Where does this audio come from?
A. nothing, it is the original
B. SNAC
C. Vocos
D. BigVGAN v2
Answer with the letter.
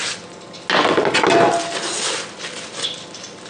A